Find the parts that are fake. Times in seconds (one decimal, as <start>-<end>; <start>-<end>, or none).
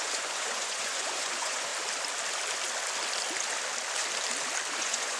0.0-1.7; 4.8-5.2